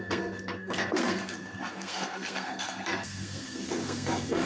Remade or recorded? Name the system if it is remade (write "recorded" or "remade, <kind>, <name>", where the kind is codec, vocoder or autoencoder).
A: remade, codec, SNAC